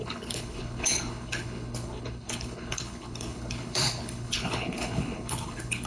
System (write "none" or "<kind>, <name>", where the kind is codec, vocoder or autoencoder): codec, HILCodec